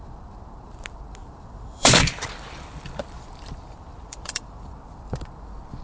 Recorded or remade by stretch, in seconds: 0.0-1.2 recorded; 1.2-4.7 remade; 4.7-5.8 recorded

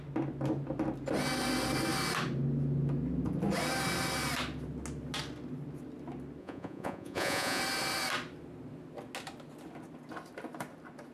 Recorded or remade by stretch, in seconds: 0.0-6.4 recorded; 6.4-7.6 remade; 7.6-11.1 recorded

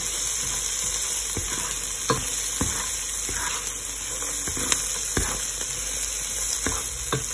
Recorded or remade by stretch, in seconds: 0.0-7.3 recorded

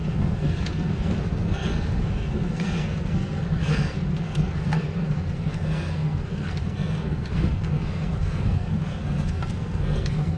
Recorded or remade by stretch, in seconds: 0.0-10.4 remade

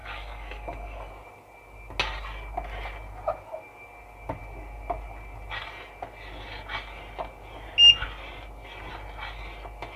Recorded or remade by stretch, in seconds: 0.0-1.1 remade; 1.1-10.0 recorded